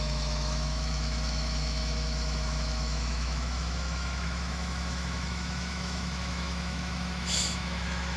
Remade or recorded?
remade